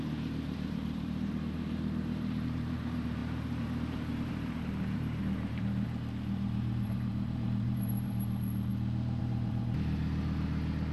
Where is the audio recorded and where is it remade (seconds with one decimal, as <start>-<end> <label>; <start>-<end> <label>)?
0.0-8.7 remade; 8.7-9.2 recorded; 9.2-10.9 remade